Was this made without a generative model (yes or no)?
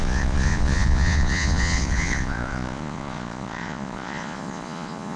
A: no